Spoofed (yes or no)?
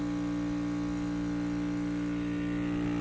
no